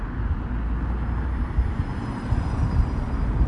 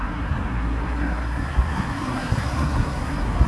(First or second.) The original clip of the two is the first